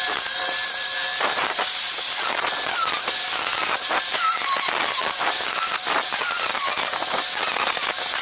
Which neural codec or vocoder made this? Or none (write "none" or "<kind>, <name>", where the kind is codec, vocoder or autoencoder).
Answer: vocoder, BigVGAN v2